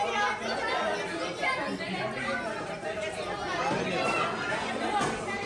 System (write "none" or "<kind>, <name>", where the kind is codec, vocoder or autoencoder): none